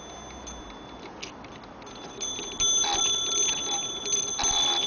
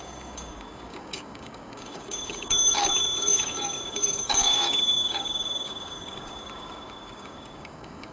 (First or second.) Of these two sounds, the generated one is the second